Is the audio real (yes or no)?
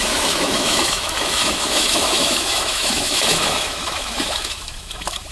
no